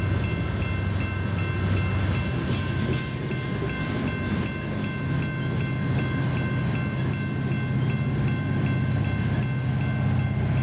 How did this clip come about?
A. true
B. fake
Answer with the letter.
A